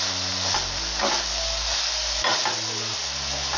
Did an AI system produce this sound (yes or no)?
no